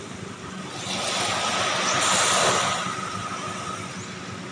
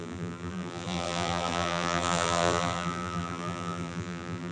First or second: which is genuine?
first